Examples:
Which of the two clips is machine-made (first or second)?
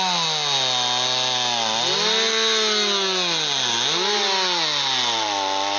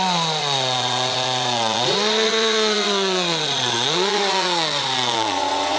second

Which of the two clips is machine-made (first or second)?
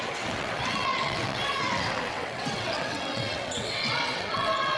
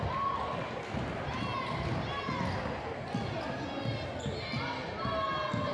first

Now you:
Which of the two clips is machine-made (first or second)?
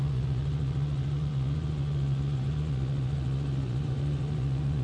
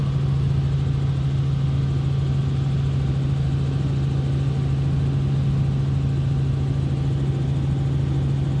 first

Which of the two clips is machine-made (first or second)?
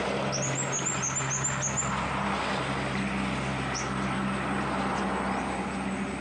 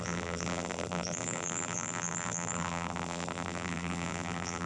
second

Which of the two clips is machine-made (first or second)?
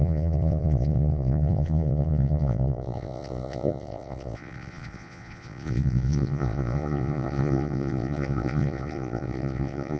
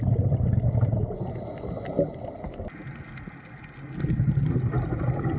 first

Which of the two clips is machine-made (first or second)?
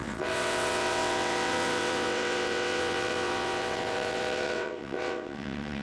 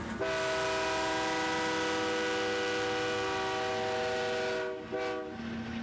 first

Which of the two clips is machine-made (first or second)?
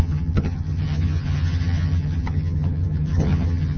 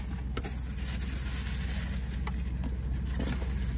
first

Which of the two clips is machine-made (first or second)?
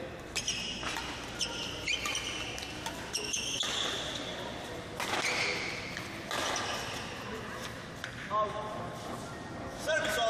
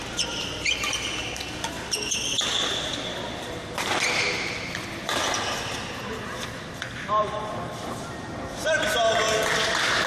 second